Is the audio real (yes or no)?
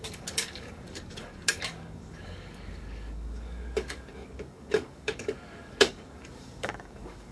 no